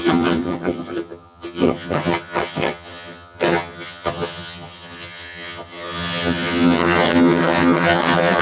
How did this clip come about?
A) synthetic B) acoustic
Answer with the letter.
A